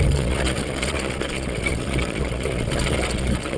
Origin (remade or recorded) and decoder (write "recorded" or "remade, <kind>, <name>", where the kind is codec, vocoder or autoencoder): remade, vocoder, Vocos